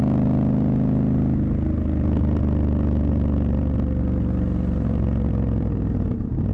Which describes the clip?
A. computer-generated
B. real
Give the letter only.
B